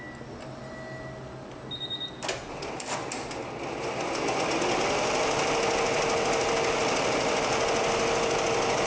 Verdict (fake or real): real